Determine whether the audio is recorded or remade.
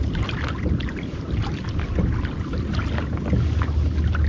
recorded